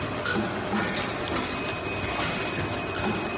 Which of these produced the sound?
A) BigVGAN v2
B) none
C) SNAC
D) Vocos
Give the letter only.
B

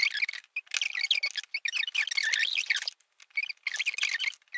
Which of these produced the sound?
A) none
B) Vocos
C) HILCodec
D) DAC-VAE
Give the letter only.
A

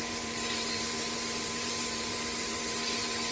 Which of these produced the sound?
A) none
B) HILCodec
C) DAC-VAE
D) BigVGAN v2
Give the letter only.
D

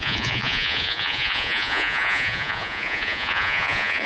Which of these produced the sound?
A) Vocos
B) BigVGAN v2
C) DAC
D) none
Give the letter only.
A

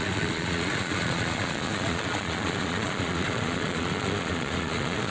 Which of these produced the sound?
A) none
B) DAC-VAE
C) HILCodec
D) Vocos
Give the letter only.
D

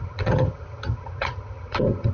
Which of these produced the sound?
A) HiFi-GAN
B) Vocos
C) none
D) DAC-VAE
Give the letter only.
A